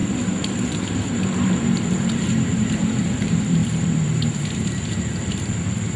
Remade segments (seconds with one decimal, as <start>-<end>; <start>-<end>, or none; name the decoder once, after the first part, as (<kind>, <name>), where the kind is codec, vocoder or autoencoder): 0.0-6.0 (vocoder, BigVGAN v2)